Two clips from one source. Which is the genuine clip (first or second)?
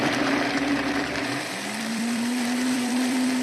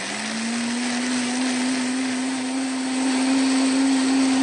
second